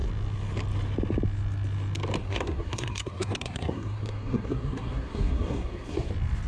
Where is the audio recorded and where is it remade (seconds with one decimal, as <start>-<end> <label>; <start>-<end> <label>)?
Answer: 0.0-2.2 recorded; 2.2-6.1 remade; 6.1-6.5 recorded